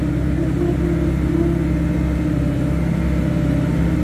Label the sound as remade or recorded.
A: recorded